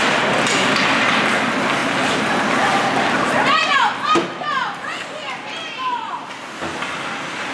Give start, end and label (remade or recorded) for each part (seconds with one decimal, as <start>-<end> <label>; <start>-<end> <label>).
0.0-7.5 recorded